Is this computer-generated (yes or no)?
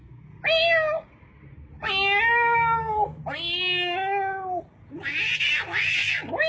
no